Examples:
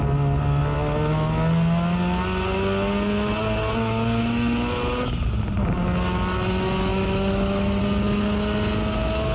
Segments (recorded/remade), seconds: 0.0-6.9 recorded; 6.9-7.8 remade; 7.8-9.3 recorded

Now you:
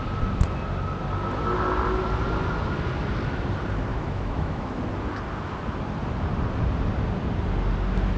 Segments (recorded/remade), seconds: 0.0-3.9 recorded; 3.9-4.8 remade; 4.8-8.2 recorded

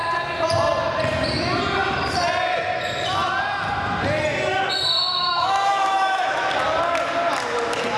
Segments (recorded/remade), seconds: 0.0-5.1 recorded; 5.1-6.5 remade; 6.5-8.0 recorded

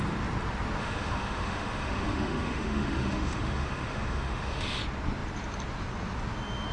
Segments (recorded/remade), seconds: 0.0-0.8 recorded; 0.8-4.8 remade; 4.8-6.7 recorded